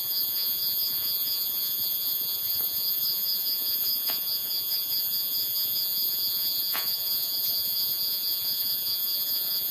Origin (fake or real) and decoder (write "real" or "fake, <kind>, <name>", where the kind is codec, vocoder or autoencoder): fake, vocoder, Vocos